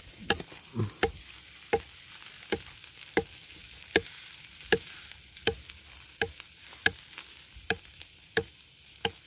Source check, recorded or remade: recorded